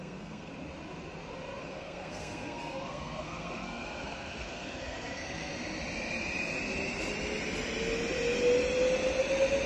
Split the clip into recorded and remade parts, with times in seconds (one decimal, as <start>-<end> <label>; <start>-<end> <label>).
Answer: 0.0-0.5 remade; 0.5-1.6 recorded; 1.6-5.5 remade; 5.5-9.7 recorded